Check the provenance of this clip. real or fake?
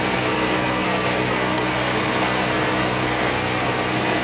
fake